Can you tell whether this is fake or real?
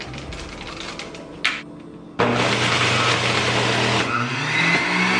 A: real